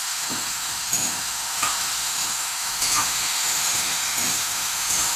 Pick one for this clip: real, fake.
fake